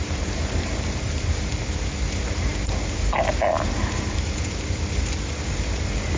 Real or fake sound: fake